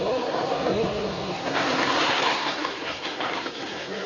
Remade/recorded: remade